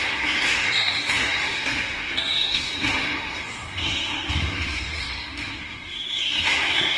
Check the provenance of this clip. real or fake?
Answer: fake